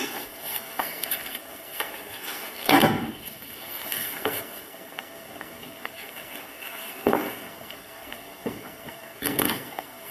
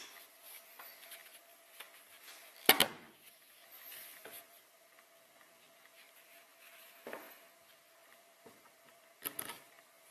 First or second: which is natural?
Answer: second